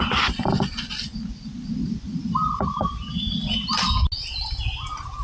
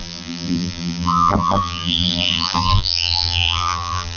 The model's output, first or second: second